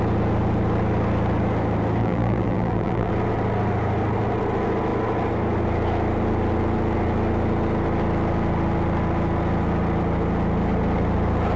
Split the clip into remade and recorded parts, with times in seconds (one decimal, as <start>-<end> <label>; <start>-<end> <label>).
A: 0.0-2.0 recorded; 2.0-3.1 remade; 3.1-11.6 recorded